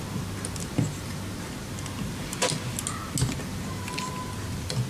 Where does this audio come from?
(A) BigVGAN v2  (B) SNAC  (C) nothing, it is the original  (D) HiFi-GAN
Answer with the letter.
C